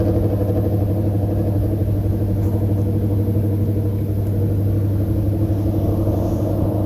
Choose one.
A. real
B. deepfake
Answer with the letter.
A